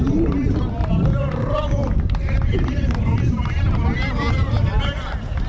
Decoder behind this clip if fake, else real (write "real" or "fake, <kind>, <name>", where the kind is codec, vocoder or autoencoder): real